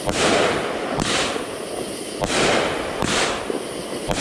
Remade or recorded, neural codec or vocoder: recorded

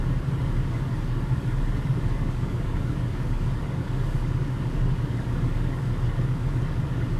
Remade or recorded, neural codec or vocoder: remade, codec, DAC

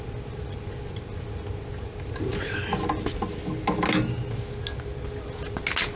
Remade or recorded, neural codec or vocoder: recorded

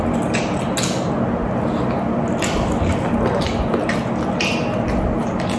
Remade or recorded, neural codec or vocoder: recorded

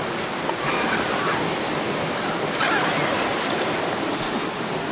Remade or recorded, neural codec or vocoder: recorded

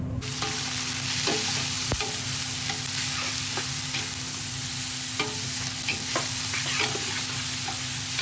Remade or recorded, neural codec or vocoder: recorded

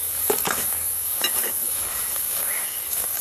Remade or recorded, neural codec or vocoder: remade, codec, DAC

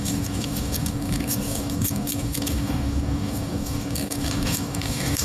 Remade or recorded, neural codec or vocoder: remade, codec, DAC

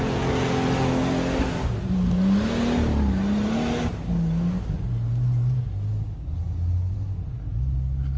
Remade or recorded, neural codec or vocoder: recorded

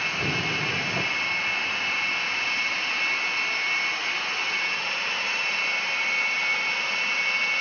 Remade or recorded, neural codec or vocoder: recorded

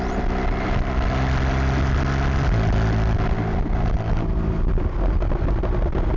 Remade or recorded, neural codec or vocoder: recorded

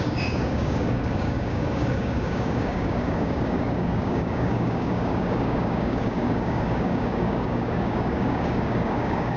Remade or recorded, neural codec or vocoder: remade, codec, DAC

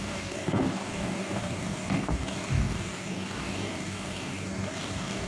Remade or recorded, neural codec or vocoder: remade, codec, DAC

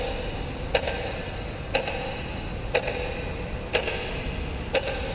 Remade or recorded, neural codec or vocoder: recorded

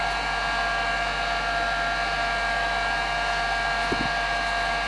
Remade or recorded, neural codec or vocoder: recorded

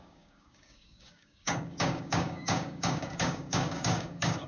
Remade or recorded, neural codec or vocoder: remade, codec, DAC